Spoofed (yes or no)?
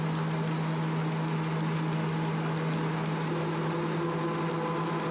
no